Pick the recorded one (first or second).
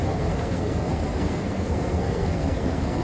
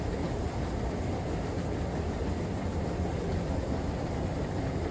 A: second